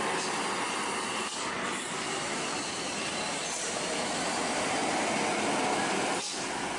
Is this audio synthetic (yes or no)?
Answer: yes